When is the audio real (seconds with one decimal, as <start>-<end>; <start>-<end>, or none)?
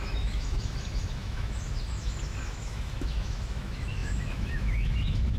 none